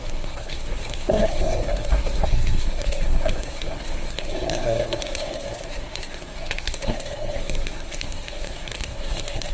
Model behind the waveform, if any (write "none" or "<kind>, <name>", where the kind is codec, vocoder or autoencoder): codec, SNAC